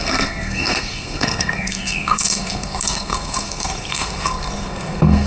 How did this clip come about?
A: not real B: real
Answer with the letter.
A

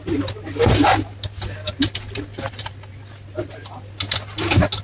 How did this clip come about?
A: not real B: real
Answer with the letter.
B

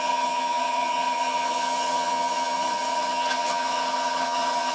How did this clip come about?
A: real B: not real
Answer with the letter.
B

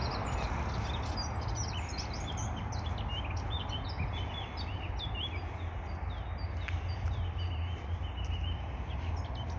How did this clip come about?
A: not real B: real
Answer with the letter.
B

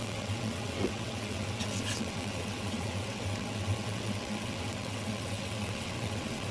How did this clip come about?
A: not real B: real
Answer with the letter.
A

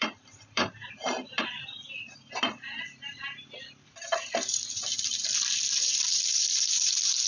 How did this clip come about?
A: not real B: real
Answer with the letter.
A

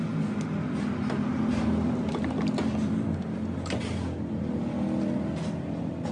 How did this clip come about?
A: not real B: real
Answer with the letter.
B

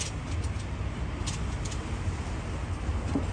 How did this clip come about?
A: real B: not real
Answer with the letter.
A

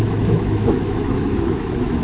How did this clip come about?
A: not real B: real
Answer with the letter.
A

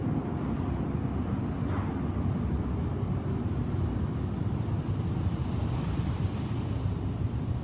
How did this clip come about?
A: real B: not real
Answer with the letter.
A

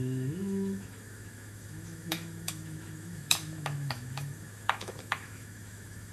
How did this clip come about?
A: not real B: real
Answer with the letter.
A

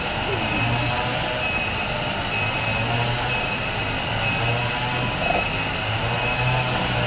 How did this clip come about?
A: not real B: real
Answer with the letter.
B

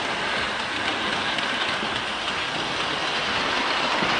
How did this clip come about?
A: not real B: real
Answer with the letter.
B